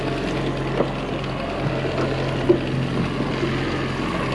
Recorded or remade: recorded